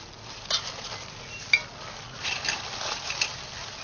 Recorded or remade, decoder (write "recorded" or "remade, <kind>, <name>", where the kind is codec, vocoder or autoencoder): recorded